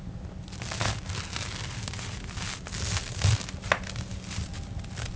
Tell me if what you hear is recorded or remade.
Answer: recorded